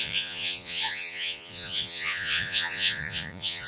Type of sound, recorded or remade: remade